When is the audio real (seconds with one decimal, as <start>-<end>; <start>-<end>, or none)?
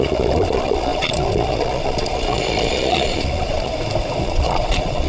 3.7-4.2